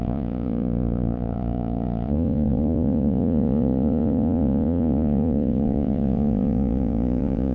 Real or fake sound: fake